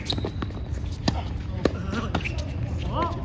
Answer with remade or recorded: recorded